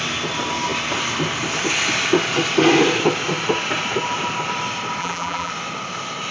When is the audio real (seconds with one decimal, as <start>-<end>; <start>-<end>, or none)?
0.0-5.0; 5.5-6.3